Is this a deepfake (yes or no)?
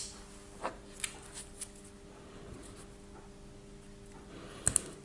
no